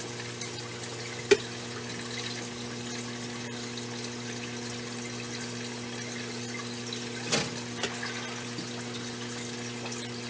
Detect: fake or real real